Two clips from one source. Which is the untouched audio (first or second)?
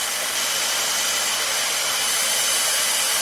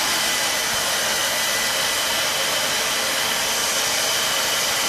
second